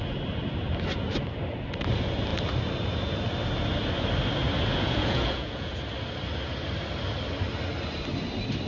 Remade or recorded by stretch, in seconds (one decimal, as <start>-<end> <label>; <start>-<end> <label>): 0.0-4.7 recorded; 4.7-5.7 remade; 5.7-8.7 recorded